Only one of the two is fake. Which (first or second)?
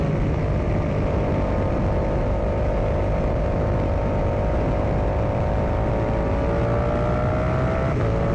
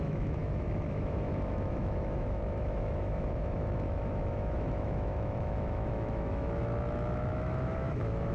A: second